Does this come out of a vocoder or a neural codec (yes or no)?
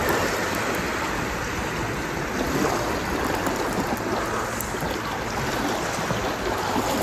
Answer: no